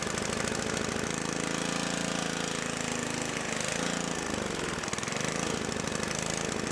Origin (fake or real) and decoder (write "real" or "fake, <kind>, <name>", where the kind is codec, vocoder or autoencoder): real